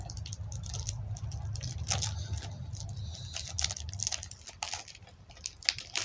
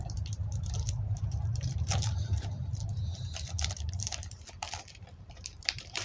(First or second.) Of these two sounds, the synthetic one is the second